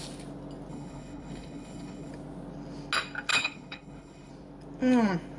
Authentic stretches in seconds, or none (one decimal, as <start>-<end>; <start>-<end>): 0.0-0.7; 2.1-3.3; 4.3-5.4